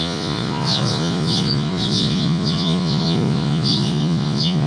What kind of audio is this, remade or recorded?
remade